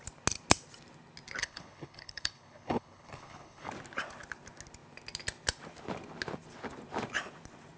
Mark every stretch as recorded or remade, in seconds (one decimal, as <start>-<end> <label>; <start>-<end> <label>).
0.0-1.4 recorded; 1.4-3.7 remade; 3.7-7.8 recorded